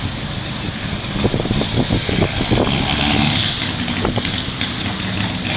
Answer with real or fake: real